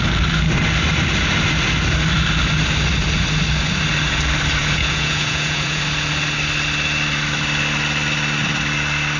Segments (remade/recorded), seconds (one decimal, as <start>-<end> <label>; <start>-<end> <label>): 0.0-4.6 recorded; 4.6-5.8 remade; 5.8-9.2 recorded